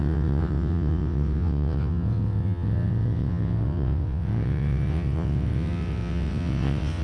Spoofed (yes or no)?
yes